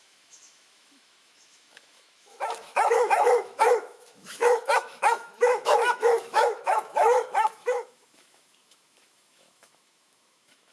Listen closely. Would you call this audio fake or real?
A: fake